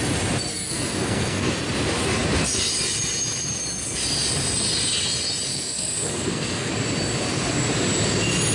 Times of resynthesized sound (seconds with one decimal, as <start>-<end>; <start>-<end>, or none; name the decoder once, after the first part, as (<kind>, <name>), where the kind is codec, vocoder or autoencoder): 0.5-1.5 (codec, SNAC); 5.5-6.7

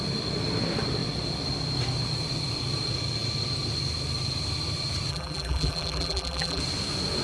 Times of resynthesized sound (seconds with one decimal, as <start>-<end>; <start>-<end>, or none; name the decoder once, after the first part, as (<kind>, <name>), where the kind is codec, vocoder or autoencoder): 5.1-6.6 (vocoder, BigVGAN v2)

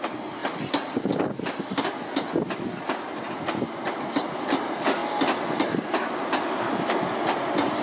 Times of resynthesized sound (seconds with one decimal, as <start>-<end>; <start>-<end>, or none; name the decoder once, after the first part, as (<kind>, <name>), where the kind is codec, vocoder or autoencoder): none

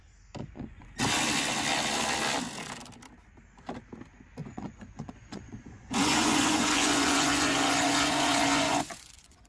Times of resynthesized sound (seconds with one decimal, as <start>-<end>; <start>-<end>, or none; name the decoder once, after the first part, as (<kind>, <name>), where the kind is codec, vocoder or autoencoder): 0.4-1.0 (vocoder, Vocos); 4.4-9.5

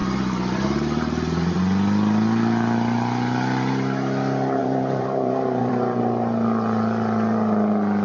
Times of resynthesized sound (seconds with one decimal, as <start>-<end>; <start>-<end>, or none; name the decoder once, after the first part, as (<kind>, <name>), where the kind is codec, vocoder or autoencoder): 0.0-1.6 (vocoder, BigVGAN v2); 4.6-5.7

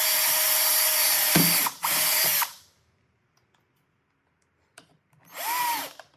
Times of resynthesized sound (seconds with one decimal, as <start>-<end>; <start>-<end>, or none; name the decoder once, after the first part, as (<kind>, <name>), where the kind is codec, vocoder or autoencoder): none

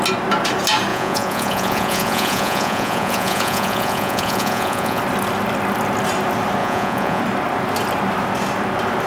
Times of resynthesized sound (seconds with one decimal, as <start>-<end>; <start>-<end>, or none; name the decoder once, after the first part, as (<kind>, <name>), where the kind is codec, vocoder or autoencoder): 0.9-5.0 (vocoder, Vocos); 6.6-7.2

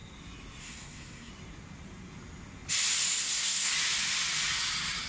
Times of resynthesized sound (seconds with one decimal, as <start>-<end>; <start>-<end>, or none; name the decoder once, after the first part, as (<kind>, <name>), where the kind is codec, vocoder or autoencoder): 0.6-1.3 (codec, SNAC); 3.2-3.7